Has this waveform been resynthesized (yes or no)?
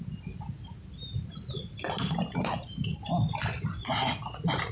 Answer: no